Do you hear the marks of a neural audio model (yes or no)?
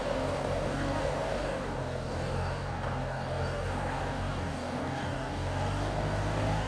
yes